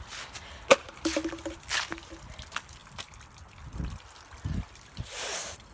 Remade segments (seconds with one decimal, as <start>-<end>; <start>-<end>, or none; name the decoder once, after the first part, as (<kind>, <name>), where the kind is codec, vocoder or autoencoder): none